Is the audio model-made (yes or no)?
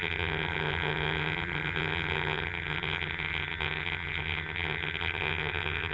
yes